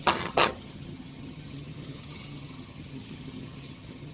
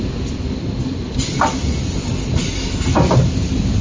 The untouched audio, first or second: second